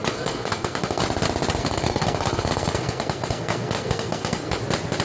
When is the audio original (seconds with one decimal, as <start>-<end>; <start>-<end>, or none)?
1.0-1.6; 4.6-5.0